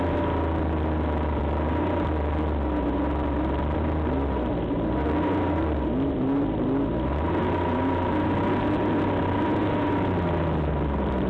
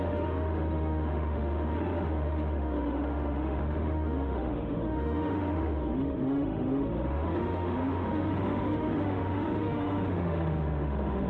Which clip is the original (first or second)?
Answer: first